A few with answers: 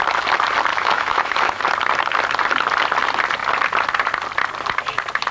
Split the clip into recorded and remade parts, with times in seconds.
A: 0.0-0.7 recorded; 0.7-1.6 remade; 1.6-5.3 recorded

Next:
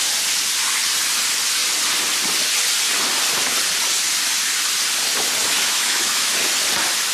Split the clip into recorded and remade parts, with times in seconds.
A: 0.0-5.4 recorded; 5.4-6.3 remade; 6.3-7.1 recorded

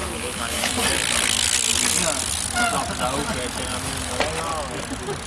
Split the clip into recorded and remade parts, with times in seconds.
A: 0.0-0.8 remade; 0.8-3.7 recorded; 3.7-4.2 remade; 4.2-5.3 recorded

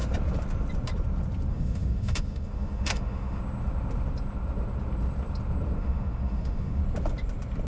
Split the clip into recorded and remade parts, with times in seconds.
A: 0.0-1.5 recorded; 1.5-3.4 remade; 3.4-5.8 recorded; 5.8-6.8 remade; 6.8-7.7 recorded

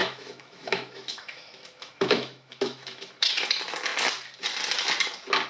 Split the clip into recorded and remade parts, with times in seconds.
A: 0.0-3.3 remade; 3.3-5.5 recorded

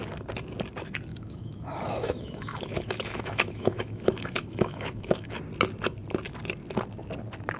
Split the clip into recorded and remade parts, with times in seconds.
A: 0.0-1.1 recorded; 1.1-5.4 remade; 5.4-7.6 recorded